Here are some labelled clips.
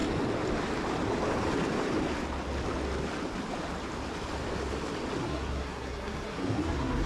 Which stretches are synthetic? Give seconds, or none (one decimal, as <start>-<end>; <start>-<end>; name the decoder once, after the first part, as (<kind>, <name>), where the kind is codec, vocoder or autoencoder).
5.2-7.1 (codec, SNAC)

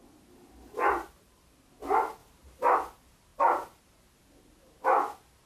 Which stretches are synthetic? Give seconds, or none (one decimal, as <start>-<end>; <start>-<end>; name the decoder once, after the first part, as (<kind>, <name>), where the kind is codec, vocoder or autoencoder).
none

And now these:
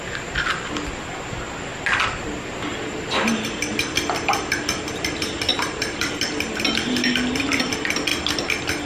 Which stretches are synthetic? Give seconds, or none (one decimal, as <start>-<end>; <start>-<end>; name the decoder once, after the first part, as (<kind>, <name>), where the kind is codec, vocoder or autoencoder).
5.5-6.1 (vocoder, BigVGAN v2)